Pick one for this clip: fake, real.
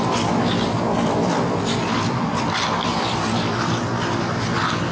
real